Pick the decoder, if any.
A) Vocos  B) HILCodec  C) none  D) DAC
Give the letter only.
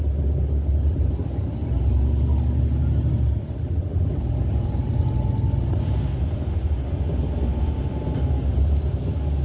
C